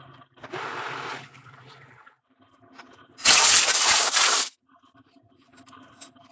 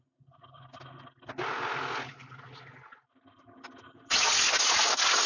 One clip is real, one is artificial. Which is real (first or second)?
second